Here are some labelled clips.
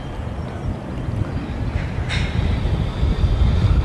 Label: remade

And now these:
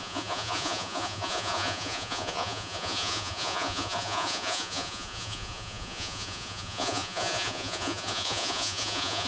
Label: remade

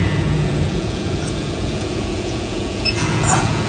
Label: remade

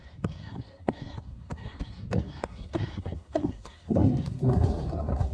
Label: remade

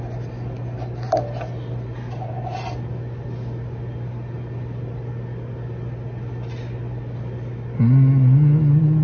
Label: recorded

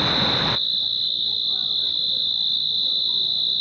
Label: recorded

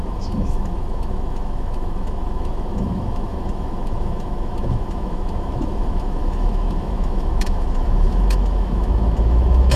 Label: remade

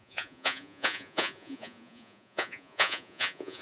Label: remade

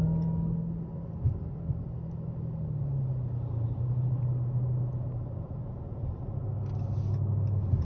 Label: recorded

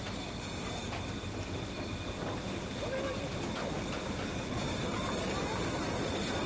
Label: recorded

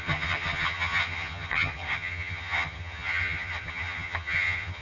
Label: remade